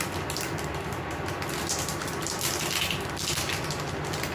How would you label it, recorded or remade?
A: recorded